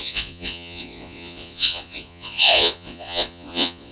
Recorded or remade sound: remade